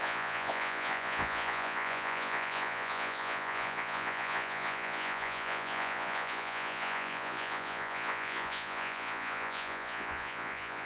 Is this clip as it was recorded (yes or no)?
no